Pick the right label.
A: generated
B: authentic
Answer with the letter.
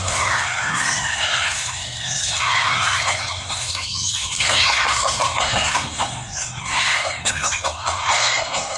A